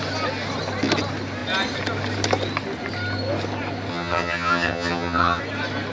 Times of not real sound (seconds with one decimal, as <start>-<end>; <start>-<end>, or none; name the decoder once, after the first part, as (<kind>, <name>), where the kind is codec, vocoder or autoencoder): 3.9-5.4 (vocoder, HiFi-GAN)